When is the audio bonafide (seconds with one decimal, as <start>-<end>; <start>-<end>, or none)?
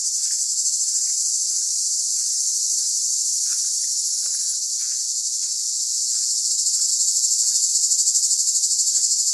0.0-4.7; 6.5-6.9; 7.7-9.3